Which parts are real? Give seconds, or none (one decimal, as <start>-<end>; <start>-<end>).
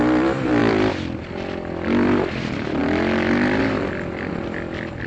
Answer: 2.8-3.6